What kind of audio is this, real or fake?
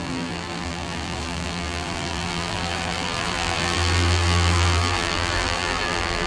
fake